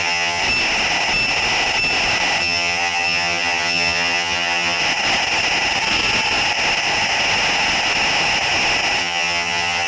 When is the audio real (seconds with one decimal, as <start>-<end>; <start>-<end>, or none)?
0.4-2.4; 4.8-9.0